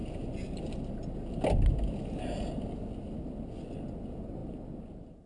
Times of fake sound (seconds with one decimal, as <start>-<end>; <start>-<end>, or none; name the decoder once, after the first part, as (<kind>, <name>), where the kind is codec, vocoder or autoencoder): none